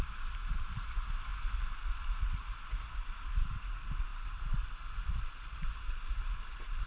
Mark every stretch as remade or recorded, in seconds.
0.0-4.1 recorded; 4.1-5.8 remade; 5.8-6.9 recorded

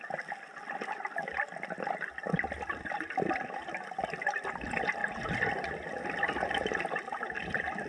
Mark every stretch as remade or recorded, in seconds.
0.0-7.9 recorded

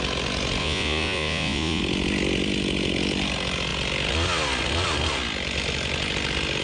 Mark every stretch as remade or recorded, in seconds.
0.0-0.6 recorded; 0.6-1.8 remade; 1.8-6.6 recorded

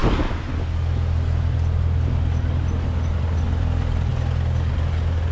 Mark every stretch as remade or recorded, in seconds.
0.0-5.3 recorded

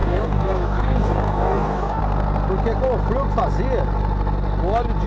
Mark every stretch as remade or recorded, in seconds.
0.0-2.0 remade; 2.0-5.1 recorded